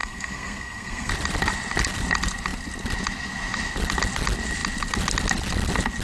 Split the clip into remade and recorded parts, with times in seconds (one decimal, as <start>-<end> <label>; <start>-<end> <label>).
0.0-1.1 remade; 1.1-6.0 recorded